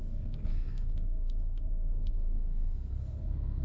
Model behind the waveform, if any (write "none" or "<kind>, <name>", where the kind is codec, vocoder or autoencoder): codec, SNAC